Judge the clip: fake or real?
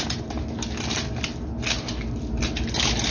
real